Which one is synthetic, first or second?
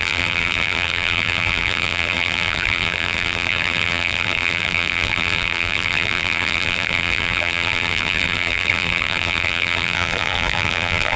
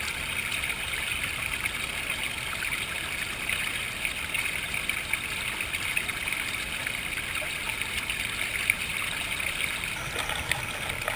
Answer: first